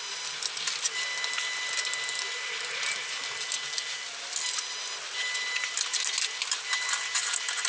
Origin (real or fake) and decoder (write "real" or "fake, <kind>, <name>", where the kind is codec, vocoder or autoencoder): real